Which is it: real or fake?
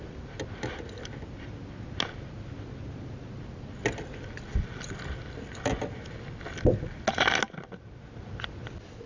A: real